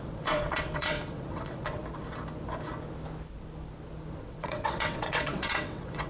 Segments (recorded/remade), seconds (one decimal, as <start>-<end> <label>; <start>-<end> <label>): 0.0-1.8 remade; 1.8-4.2 recorded; 4.2-6.1 remade